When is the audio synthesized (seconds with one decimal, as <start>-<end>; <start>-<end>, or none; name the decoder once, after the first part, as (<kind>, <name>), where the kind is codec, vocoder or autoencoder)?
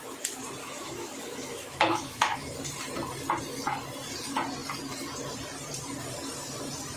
0.6-2.4 (autoencoder, DAC-VAE)